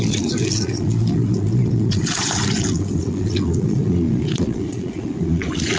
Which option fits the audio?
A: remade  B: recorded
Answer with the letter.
A